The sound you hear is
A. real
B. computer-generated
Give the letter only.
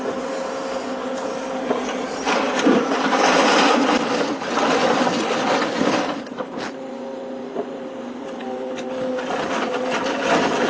A